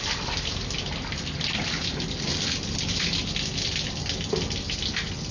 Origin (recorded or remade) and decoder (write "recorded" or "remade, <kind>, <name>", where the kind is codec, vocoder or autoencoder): recorded